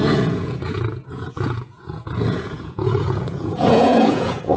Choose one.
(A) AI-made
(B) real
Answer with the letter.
A